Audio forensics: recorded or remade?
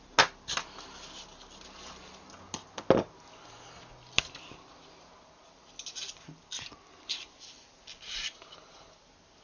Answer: recorded